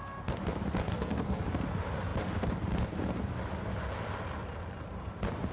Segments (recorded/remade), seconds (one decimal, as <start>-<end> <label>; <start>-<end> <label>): 0.0-0.9 recorded; 0.9-1.4 remade; 1.4-5.5 recorded